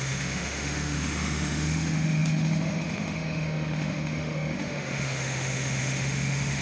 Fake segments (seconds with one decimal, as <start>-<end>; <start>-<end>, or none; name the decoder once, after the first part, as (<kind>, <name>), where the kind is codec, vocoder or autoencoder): 0.0-6.6 (autoencoder, DAC-VAE)